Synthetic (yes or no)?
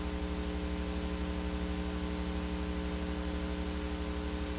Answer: no